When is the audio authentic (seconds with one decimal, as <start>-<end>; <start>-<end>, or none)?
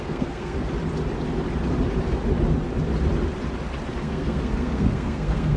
0.6-4.0